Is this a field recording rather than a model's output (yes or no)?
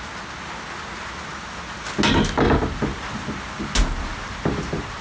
yes